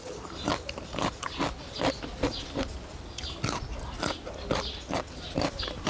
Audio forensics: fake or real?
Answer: real